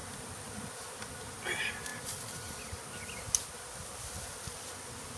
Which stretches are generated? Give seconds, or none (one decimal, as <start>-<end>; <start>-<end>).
none